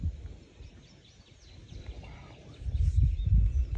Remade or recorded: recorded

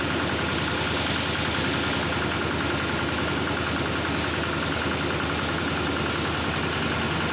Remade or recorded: recorded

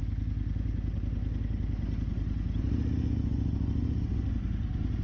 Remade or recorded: recorded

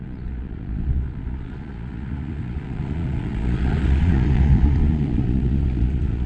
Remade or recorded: remade